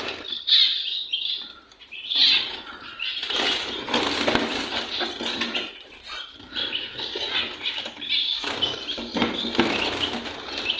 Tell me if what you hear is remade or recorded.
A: recorded